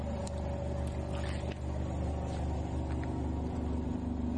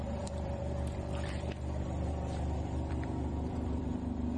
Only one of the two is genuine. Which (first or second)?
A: first